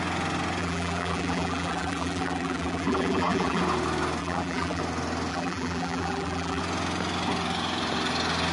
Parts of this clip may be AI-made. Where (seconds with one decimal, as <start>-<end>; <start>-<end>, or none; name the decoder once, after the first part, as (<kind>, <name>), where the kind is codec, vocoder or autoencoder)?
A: 0.6-3.6 (vocoder, BigVGAN v2); 4.2-4.8; 5.3-6.6